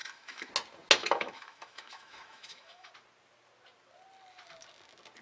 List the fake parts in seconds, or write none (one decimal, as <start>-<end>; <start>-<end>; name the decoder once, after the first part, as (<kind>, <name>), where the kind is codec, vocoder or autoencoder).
0.0-0.5 (autoencoder, DAC-VAE); 1.0-2.9